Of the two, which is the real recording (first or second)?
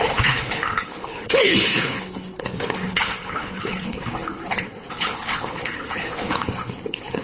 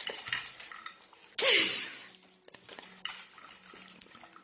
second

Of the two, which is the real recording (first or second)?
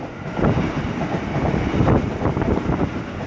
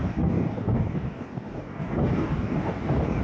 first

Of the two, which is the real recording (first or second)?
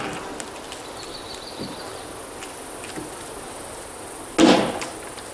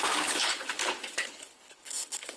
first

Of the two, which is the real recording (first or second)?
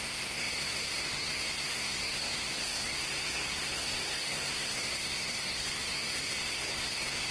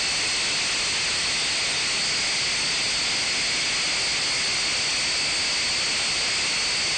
second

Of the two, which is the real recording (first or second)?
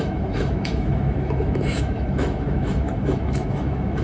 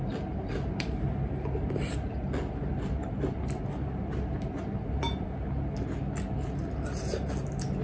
second